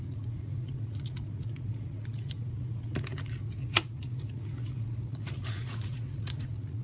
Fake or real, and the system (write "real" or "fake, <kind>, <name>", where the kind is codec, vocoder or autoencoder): fake, vocoder, Vocos